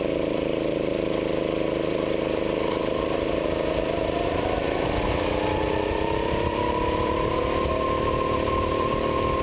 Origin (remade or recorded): remade